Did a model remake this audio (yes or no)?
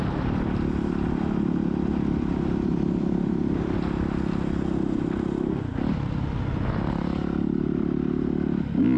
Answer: no